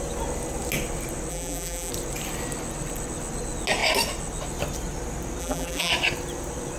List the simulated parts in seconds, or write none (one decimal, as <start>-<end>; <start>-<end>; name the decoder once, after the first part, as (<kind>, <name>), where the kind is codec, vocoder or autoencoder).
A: 1.3-1.9 (vocoder, BigVGAN v2); 5.4-5.9